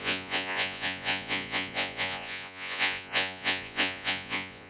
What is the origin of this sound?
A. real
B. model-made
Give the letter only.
B